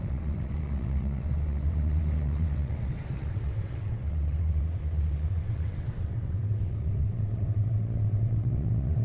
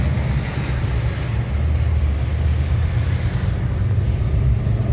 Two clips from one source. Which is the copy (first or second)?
first